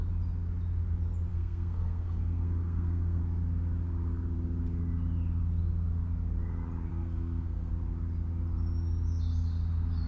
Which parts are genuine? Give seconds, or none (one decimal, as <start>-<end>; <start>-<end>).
0.0-1.3; 3.2-6.9; 7.7-10.1